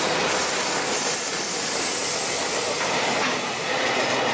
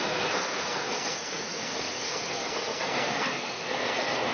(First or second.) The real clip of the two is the first